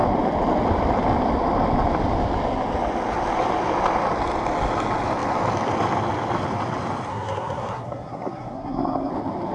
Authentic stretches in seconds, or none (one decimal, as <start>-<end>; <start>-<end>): 0.0-7.1; 9.1-9.5